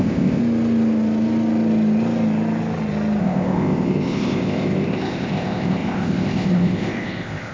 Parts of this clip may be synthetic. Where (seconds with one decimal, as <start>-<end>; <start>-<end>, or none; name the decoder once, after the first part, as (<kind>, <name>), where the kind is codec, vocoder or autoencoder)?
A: 0.0-0.4 (codec, ZipCodec); 3.2-7.5